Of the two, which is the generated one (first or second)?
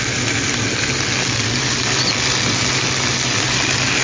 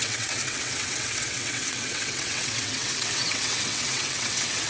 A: second